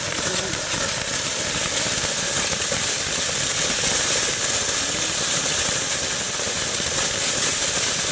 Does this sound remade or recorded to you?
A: recorded